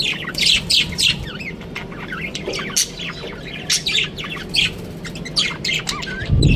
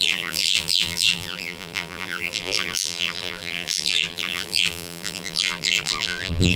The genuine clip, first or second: first